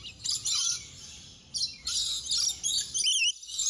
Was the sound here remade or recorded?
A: recorded